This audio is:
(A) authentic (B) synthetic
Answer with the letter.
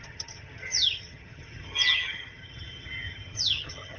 B